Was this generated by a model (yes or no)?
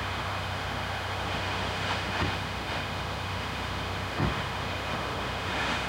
yes